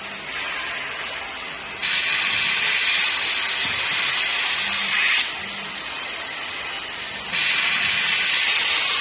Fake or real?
real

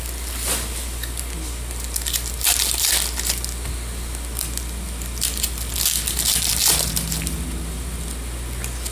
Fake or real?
real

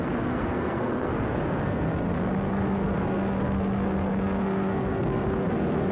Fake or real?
fake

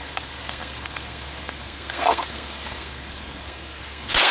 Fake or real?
fake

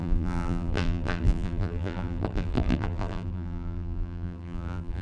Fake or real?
fake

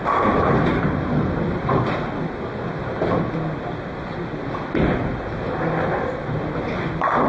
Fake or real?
fake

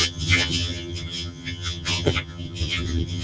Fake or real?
fake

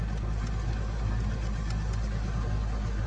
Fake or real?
real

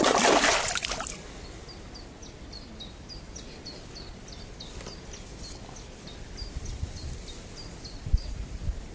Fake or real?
real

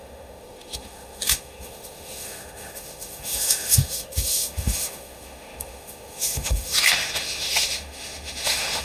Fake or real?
fake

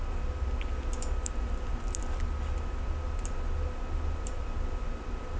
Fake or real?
real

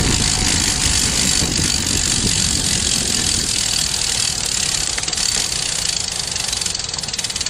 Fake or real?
real